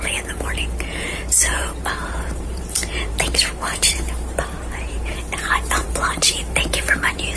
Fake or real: fake